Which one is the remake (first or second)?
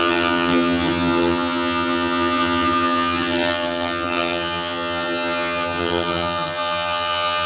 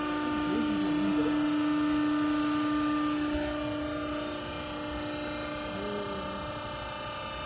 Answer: first